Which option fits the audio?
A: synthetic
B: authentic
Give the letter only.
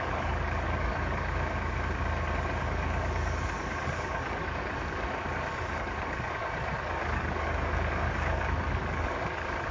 A